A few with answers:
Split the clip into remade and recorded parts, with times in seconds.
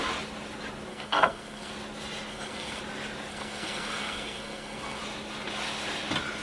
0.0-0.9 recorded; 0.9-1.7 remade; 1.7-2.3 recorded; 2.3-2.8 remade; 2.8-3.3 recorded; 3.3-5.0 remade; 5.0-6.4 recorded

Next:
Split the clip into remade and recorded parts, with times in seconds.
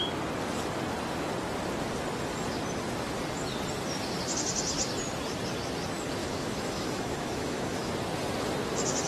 0.0-6.2 recorded; 6.2-7.9 remade; 7.9-9.1 recorded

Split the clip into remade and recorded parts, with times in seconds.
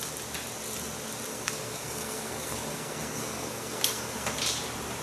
0.0-1.3 recorded; 1.3-4.3 remade; 4.3-5.0 recorded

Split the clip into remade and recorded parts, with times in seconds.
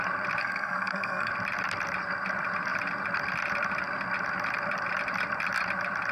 0.0-0.4 recorded; 0.4-1.3 remade; 1.3-6.1 recorded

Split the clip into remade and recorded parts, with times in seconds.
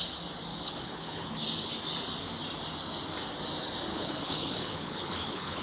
0.0-0.5 recorded; 0.5-1.4 remade; 1.4-3.9 recorded; 3.9-5.6 remade